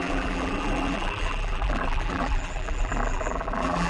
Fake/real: fake